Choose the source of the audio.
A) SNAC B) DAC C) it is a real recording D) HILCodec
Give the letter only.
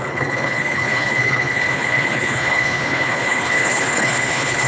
D